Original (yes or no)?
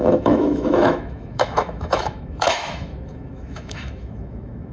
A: no